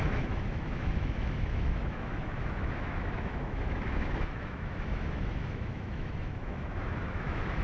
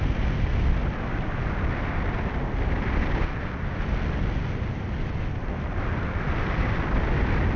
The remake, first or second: first